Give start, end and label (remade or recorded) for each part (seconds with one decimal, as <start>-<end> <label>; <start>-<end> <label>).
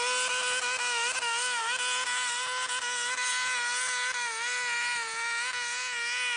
0.0-6.4 recorded